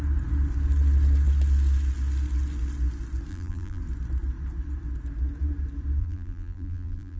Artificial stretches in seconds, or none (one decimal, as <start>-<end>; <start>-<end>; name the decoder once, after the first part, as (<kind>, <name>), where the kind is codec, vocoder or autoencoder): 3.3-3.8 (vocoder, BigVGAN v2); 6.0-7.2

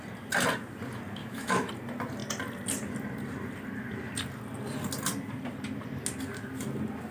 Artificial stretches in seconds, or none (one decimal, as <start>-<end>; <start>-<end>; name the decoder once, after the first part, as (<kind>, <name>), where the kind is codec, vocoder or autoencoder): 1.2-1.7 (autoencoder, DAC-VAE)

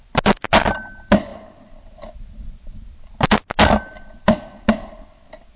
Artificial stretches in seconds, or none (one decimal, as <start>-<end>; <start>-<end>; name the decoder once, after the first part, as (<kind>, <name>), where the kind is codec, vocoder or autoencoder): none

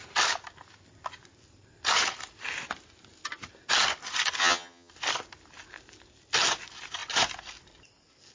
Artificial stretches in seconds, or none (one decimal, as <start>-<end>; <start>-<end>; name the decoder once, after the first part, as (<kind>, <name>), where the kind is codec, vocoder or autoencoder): 4.4-4.9 (vocoder, HiFi-GAN)

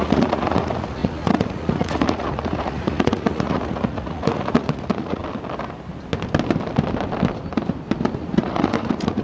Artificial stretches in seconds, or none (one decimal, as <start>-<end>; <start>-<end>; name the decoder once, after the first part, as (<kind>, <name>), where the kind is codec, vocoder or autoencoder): 0.0-5.2 (vocoder, Vocos); 8.2-9.2

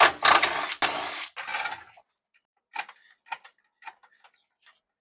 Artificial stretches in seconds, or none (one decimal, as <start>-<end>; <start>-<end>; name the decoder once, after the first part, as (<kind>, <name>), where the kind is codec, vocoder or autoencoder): none

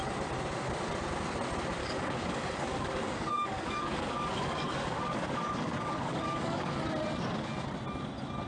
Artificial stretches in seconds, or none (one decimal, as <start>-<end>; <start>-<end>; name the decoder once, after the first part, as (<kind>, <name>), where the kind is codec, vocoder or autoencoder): 1.8-6.8 (codec, DAC)

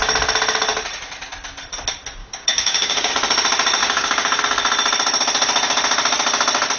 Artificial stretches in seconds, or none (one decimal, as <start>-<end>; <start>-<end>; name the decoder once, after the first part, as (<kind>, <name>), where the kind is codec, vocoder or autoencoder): 2.2-3.1 (codec, DAC); 3.8-4.4